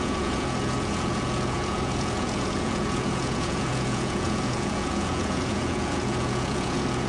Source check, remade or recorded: remade